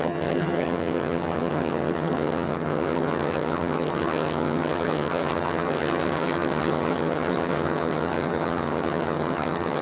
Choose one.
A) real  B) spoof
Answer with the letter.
B